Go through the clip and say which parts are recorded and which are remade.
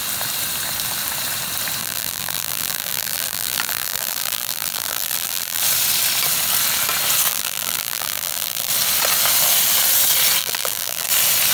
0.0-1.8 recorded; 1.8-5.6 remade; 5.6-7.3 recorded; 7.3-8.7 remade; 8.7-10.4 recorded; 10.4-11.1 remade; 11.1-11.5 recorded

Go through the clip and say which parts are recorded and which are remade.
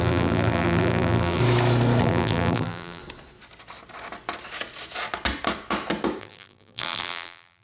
0.0-1.4 remade; 1.4-2.0 recorded; 2.0-3.0 remade; 3.0-6.2 recorded; 6.2-7.6 remade